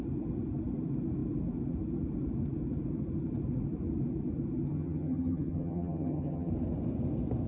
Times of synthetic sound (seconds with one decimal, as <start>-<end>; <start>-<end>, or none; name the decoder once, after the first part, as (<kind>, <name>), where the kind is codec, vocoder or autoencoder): 4.7-6.5 (vocoder, HiFi-GAN)